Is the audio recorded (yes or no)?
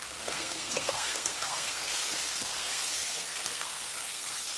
no